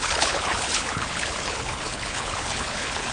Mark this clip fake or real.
fake